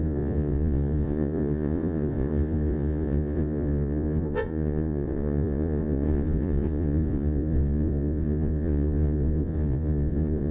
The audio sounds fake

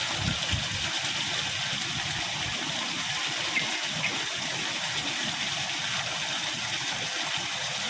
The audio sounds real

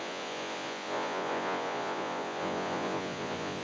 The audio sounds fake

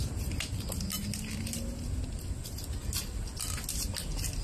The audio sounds real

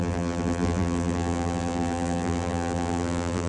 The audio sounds fake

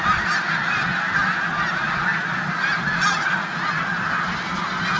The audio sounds real